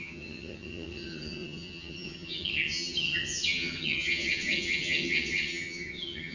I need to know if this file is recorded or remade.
remade